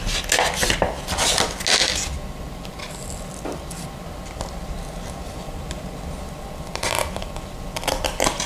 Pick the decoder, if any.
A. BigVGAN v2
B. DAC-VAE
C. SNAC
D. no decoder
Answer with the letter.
D